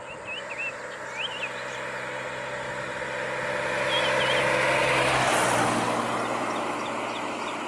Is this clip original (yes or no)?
yes